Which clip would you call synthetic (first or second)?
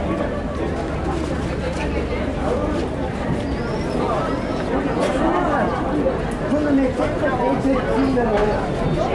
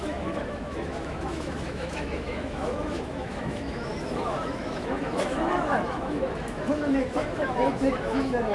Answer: second